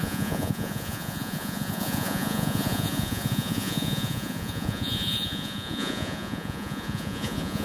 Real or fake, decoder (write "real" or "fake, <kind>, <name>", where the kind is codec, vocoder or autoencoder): fake, vocoder, Vocos